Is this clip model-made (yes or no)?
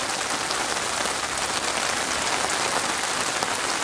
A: no